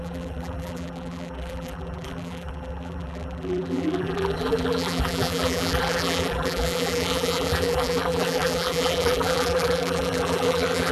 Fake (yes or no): yes